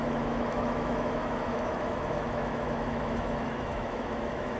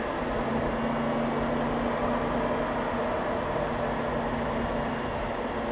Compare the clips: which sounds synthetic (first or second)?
first